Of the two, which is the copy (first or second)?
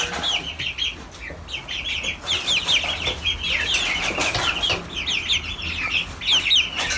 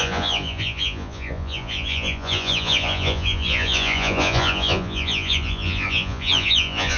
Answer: second